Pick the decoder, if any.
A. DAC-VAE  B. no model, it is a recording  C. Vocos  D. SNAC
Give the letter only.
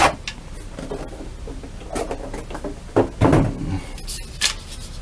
B